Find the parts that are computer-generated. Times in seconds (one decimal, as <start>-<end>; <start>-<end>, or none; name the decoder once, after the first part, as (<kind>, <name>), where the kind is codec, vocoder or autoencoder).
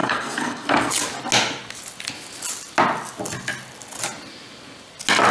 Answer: 0.0-0.9 (codec, SNAC)